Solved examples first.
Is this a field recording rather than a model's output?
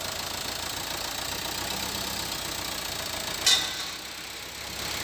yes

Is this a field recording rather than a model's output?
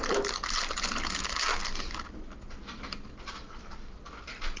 yes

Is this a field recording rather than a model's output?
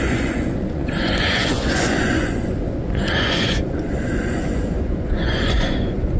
no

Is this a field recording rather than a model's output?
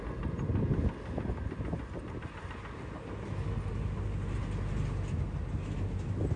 yes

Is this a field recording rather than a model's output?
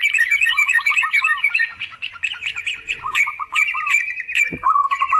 no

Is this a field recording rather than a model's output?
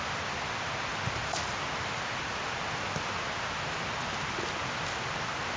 yes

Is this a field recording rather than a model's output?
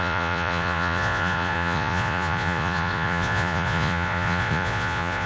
no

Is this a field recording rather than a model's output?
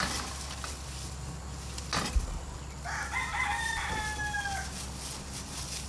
yes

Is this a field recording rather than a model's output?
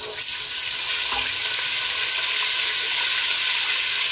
yes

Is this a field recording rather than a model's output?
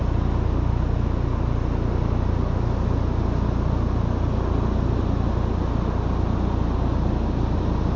yes